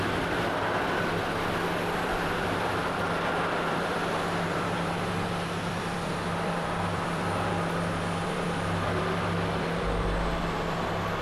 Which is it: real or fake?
fake